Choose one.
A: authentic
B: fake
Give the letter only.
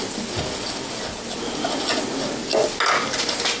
A